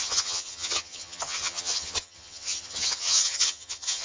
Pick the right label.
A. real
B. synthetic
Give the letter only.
B